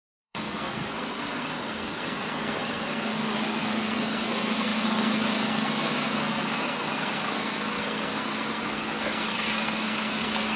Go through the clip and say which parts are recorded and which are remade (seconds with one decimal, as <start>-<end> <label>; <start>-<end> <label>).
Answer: 0.0-10.6 remade